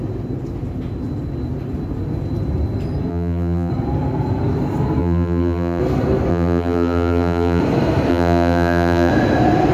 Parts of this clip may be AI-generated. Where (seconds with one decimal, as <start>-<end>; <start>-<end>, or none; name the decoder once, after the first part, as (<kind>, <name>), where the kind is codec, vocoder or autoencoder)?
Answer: 3.1-3.7 (vocoder, BigVGAN v2); 5.0-5.8; 6.3-7.6; 8.1-9.1